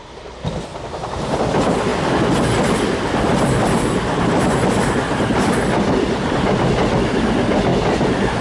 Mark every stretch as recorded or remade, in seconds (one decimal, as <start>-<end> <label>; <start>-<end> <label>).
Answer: 0.0-0.7 recorded; 0.7-1.4 remade; 1.4-8.4 recorded